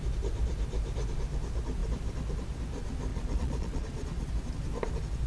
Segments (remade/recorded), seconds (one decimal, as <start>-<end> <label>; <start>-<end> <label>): 0.0-3.1 recorded; 3.1-4.3 remade; 4.3-5.3 recorded